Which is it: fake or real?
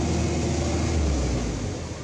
real